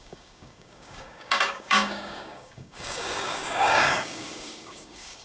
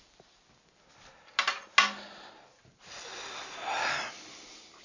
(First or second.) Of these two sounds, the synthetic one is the first